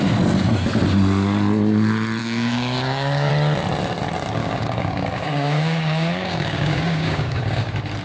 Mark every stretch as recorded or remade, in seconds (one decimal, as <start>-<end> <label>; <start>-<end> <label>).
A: 0.0-2.2 recorded; 2.2-3.3 remade; 3.3-4.4 recorded; 4.4-7.6 remade; 7.6-8.0 recorded